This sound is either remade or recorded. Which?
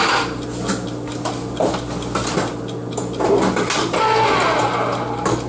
recorded